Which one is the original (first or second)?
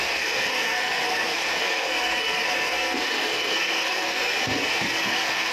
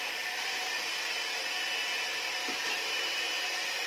second